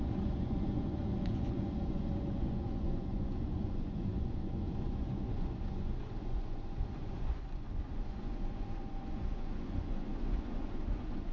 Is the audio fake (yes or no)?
yes